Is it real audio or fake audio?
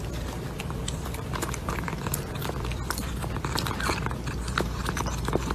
fake